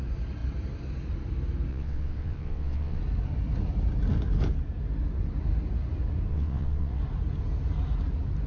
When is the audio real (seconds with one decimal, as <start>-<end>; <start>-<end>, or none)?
0.0-1.7; 3.0-6.3; 7.0-8.5